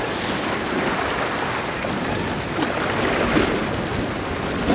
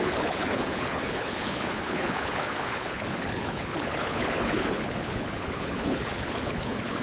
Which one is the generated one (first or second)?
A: second